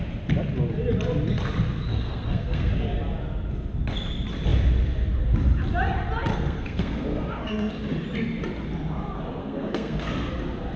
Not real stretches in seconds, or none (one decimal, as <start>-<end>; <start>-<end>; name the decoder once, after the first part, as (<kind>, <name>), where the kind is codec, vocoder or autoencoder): 1.9-2.7 (codec, SNAC); 6.3-7.7; 9.4-10.3